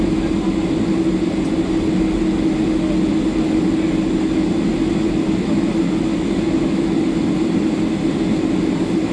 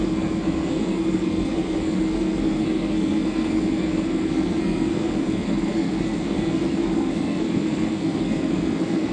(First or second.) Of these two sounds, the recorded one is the first